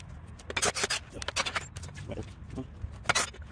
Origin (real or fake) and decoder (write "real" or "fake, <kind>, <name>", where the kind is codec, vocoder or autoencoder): real